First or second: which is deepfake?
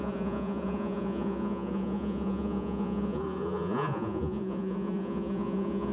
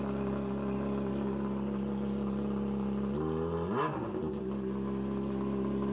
first